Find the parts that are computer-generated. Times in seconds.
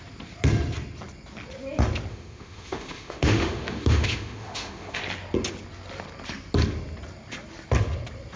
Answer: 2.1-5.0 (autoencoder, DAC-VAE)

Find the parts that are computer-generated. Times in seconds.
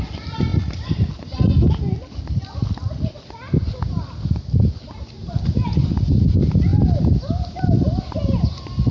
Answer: none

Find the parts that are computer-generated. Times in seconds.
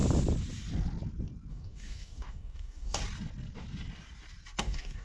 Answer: 1.5-3.0 (codec, DAC); 4.6-5.0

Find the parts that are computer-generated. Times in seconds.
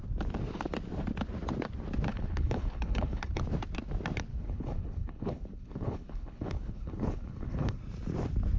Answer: 2.1-3.4 (codec, HILCodec); 4.3-7.8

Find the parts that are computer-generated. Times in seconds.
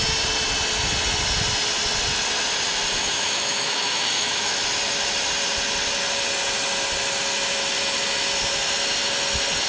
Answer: 3.0-4.5 (autoencoder, DAC-VAE)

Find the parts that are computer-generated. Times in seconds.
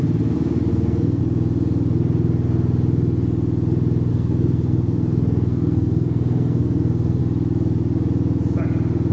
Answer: 0.7-1.2 (codec, SNAC); 4.1-7.2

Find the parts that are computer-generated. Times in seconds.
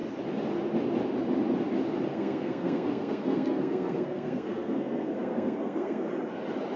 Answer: 2.1-6.1 (codec, SNAC)